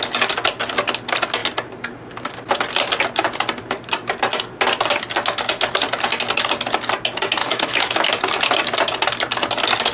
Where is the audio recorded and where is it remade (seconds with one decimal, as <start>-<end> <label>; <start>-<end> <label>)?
0.0-7.4 recorded; 7.4-8.1 remade; 8.1-9.9 recorded